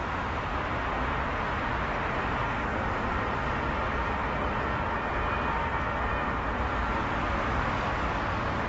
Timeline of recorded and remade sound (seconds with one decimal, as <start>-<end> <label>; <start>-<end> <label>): 0.0-2.7 recorded; 2.7-5.3 remade; 5.3-8.7 recorded